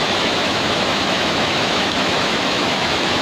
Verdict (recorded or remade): remade